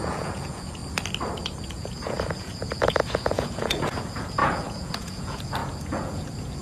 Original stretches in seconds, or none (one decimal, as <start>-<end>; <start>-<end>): 0.8-1.6